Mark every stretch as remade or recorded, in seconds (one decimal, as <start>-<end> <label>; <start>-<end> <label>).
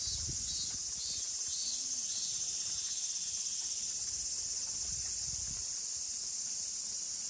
0.0-7.3 recorded